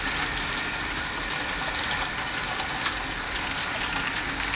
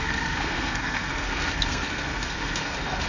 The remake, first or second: second